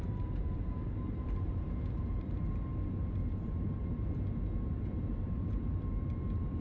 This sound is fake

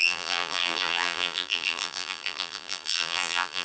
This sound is fake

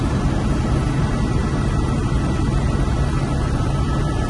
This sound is fake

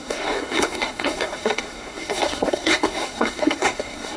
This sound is fake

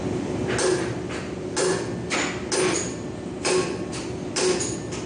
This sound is real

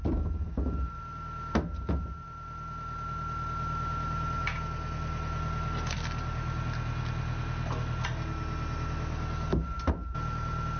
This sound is real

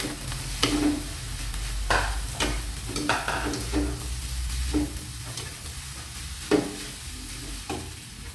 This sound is real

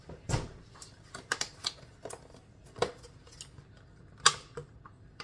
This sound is real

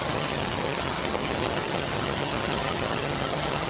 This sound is fake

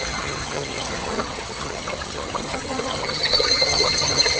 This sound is fake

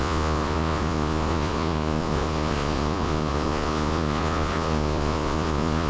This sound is fake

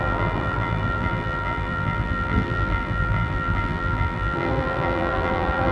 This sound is fake